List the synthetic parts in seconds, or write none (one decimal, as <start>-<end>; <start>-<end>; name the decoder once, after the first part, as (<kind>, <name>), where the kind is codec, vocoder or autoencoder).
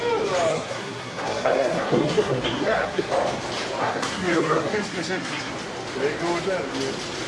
0.5-3.1 (codec, SNAC); 3.8-5.5